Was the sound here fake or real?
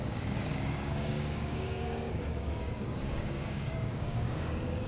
fake